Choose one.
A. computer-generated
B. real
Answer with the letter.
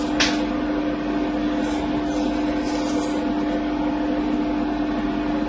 B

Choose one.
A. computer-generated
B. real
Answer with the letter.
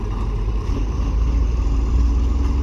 A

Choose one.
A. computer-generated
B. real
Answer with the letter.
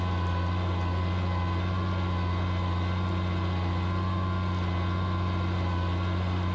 B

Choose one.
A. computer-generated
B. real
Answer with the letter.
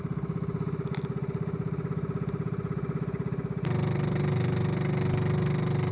B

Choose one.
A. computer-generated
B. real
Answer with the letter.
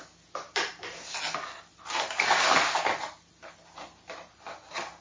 B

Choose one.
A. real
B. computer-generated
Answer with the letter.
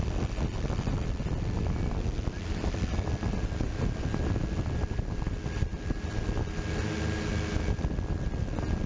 A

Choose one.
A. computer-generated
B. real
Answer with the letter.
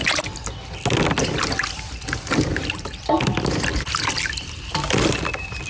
B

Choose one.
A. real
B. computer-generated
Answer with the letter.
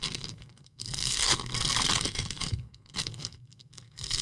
B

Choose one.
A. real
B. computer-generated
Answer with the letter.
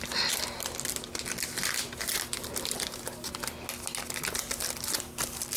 A